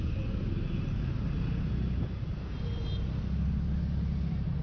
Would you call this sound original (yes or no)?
yes